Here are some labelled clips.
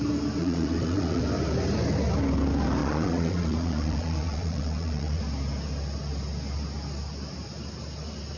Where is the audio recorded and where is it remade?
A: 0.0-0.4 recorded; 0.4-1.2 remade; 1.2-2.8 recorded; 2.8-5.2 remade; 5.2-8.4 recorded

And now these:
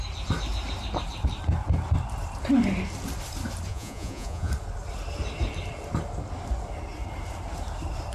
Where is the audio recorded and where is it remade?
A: 0.0-3.7 recorded; 3.7-4.5 remade; 4.5-8.1 recorded

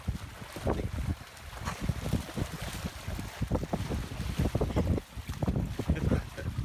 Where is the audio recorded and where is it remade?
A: 0.0-6.6 recorded

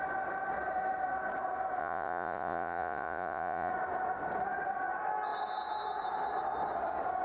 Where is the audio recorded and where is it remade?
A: 0.0-1.8 recorded; 1.8-3.7 remade; 3.7-7.2 recorded

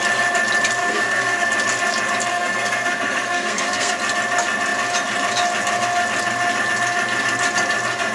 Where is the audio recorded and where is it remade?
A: 0.0-0.8 recorded; 0.8-1.5 remade; 1.5-2.3 recorded; 2.3-3.9 remade; 3.9-8.1 recorded

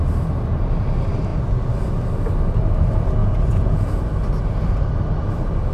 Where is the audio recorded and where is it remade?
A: 0.0-3.2 recorded; 3.2-4.0 remade; 4.0-5.7 recorded

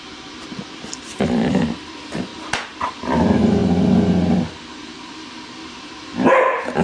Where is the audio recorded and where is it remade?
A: 0.0-2.3 remade; 2.3-3.0 recorded; 3.0-3.6 remade; 3.6-5.1 recorded; 5.1-6.8 remade